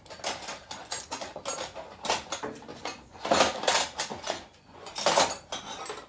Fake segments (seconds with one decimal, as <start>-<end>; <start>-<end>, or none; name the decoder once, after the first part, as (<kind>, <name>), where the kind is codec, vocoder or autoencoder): 0.8-1.4 (vocoder, Vocos); 2.7-3.4; 4.1-4.9